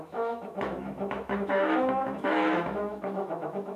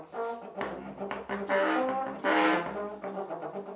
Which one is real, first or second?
second